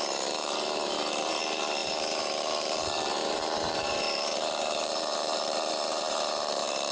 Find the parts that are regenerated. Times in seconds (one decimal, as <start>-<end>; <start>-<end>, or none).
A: 0.0-6.9